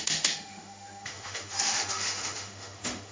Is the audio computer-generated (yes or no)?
yes